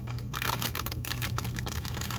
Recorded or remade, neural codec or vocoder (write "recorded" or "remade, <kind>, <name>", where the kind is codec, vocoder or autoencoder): remade, codec, SNAC